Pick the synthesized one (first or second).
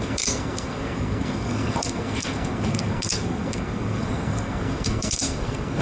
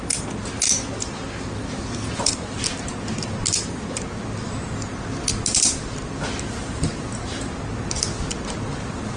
first